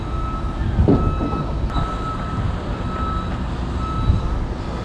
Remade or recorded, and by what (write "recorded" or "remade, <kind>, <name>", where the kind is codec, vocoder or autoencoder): recorded